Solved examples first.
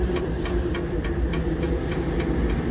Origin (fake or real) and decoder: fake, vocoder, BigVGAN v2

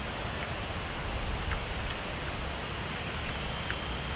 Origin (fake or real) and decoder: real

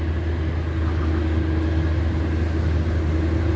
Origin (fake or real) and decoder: real